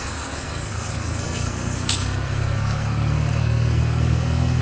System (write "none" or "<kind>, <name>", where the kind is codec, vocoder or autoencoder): codec, SNAC